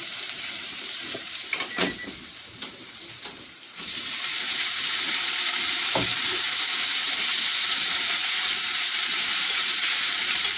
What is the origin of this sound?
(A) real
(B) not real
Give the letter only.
B